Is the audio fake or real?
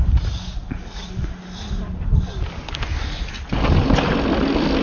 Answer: real